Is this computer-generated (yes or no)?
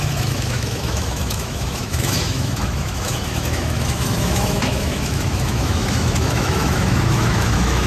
yes